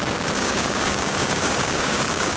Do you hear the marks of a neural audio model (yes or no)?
yes